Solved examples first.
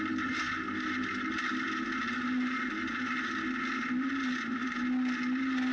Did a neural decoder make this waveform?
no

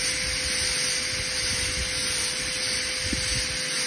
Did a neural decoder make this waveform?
no